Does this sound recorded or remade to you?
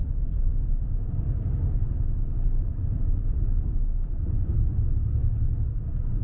recorded